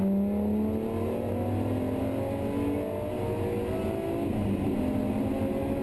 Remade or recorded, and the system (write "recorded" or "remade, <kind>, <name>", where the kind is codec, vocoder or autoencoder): recorded